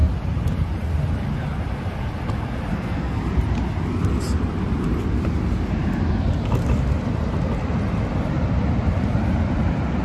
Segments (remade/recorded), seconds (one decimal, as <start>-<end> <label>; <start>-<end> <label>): 0.0-2.7 recorded; 2.7-3.2 remade; 3.2-10.0 recorded